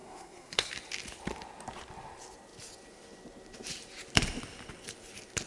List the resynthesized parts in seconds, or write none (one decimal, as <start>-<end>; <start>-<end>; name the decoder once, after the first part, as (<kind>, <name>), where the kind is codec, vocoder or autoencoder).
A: 0.0-0.7 (codec, SNAC)